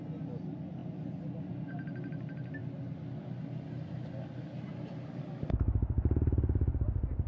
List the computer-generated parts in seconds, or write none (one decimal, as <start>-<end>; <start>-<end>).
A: none